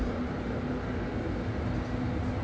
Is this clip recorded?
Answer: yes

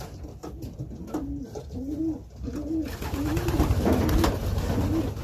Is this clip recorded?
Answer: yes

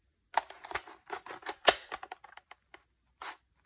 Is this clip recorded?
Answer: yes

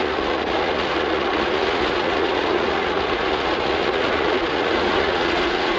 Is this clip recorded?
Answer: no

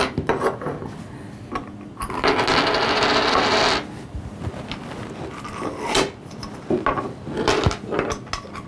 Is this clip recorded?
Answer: yes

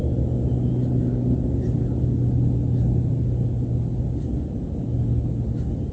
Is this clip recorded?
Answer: yes